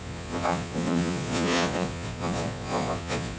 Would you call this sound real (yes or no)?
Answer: no